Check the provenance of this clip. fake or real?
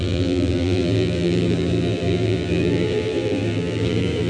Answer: fake